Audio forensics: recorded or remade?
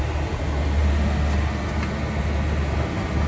recorded